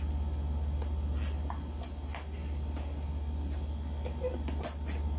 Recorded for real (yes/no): yes